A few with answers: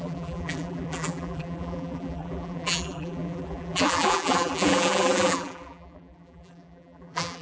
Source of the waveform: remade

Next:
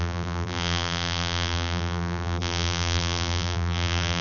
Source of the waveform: remade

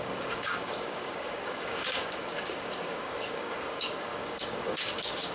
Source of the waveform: remade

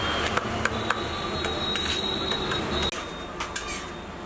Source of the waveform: recorded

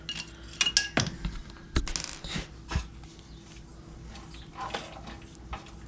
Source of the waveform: recorded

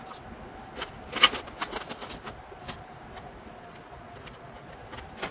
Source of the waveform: recorded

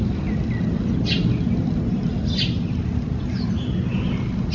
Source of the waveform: recorded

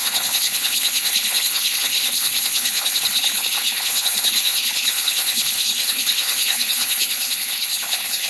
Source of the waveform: remade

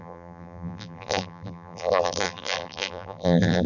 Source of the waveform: remade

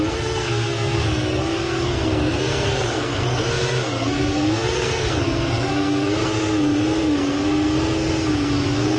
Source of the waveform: remade